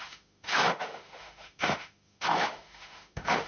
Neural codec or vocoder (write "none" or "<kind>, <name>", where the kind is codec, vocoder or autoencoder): autoencoder, DAC-VAE